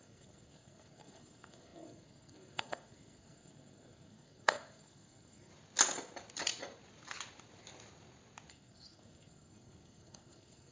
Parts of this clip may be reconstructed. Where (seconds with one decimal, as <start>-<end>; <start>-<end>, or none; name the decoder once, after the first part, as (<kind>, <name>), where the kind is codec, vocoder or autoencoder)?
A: 0.0-5.5 (codec, SNAC); 8.5-10.7